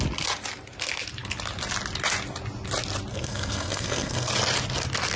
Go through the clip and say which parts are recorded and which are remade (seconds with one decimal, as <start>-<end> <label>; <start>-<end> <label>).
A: 0.0-3.1 recorded; 3.1-4.3 remade; 4.3-5.2 recorded